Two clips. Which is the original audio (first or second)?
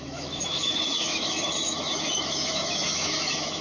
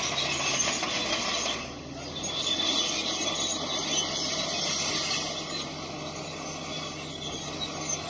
second